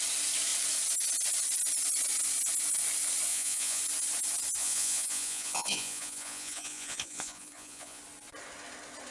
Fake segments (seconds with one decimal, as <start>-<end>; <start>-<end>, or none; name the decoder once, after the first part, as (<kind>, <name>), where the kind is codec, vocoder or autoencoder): 3.3-3.8 (vocoder, Vocos); 4.6-8.0